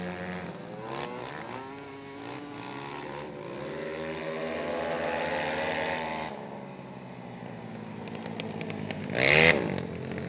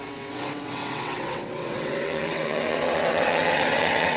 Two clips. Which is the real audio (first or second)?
first